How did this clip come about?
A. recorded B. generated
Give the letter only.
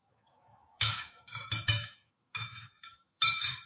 B